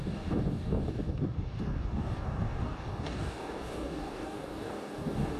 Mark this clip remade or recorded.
remade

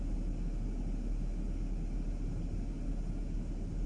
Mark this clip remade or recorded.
recorded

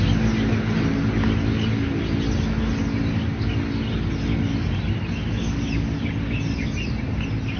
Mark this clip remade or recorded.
recorded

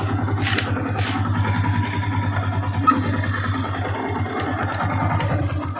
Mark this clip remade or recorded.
recorded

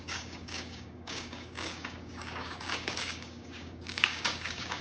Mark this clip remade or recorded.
remade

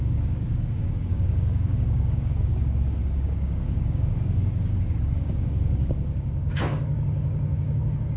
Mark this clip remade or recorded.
remade